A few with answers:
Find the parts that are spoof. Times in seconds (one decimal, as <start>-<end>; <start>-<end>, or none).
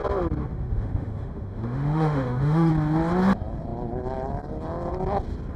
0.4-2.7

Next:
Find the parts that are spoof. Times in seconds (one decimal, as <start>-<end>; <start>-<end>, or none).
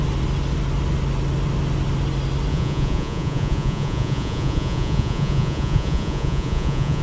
2.5-7.0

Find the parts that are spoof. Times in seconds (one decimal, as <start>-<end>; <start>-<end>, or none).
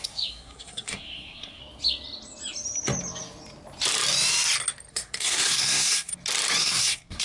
0.0-1.6; 4.9-6.1; 6.6-7.2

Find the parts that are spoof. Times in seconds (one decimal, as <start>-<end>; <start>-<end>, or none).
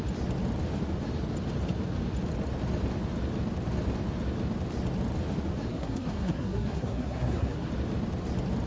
5.7-7.7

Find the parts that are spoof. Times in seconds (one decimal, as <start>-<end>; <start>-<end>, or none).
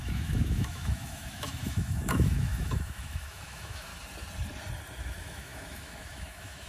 0.0-3.9; 5.0-6.7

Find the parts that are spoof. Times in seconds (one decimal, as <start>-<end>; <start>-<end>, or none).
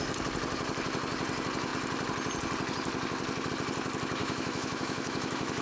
4.2-5.6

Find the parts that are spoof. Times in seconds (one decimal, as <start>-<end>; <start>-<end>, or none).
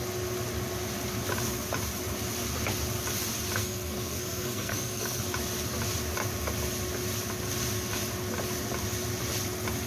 3.6-5.2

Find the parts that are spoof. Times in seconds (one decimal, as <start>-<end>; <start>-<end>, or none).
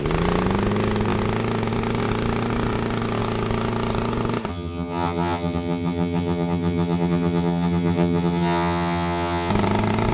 4.5-9.5